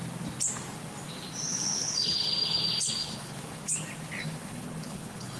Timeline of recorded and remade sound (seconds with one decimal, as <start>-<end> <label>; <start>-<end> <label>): 0.0-1.5 recorded; 1.5-2.6 remade; 2.6-3.0 recorded; 3.0-3.6 remade; 3.6-4.5 recorded; 4.5-5.4 remade